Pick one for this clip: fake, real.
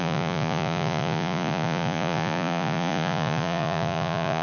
fake